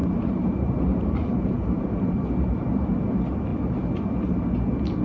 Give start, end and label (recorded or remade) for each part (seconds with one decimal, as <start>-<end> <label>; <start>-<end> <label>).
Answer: 0.0-3.0 remade; 3.0-5.0 recorded